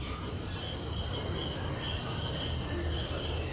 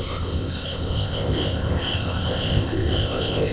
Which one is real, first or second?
first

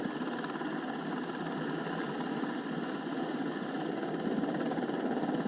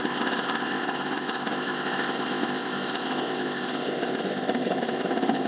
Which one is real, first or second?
first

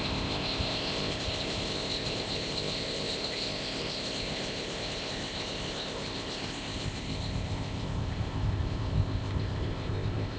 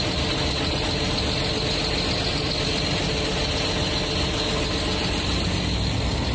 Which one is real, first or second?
second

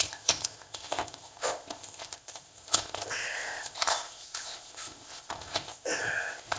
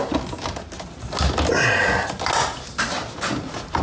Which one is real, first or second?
second